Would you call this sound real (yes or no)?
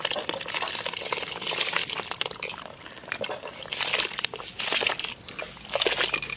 yes